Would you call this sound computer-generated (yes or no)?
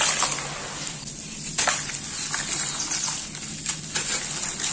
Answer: no